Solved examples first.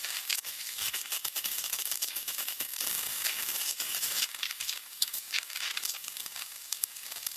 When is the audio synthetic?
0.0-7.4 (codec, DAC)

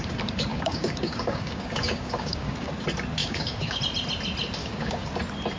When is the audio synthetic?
0.5-2.7 (codec, DAC); 3.2-3.8; 4.6-5.1